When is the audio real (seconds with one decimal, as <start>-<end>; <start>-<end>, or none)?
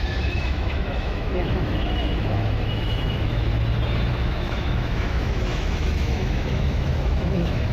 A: 3.5-4.1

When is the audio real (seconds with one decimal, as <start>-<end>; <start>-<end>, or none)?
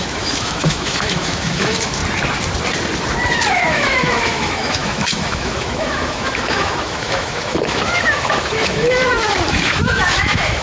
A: 2.0-3.5; 9.0-9.5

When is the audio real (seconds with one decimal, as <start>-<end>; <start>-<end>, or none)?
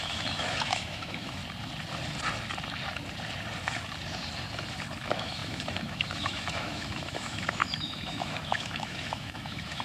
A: 1.4-5.0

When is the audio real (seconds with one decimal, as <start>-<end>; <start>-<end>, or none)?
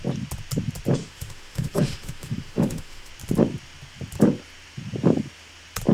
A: 0.0-1.0; 3.1-5.9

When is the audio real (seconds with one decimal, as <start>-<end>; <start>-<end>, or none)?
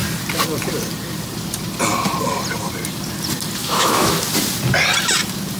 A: 0.0-3.6; 4.1-5.6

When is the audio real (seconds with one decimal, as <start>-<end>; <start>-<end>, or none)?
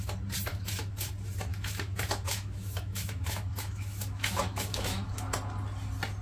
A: 0.0-0.5; 1.1-1.5; 5.2-6.2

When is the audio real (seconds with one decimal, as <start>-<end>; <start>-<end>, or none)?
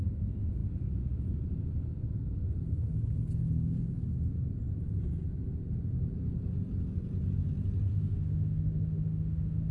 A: 0.0-7.9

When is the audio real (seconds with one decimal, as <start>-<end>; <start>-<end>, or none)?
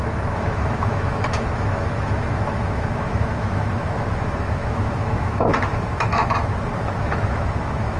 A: 6.2-7.0